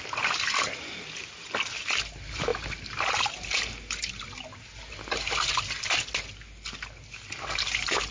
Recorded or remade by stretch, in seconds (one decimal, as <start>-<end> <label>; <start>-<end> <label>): 0.0-8.1 recorded